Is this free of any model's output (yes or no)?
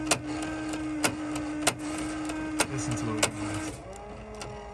yes